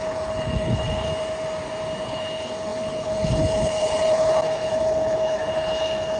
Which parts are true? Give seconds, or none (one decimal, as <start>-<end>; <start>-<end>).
1.1-2.0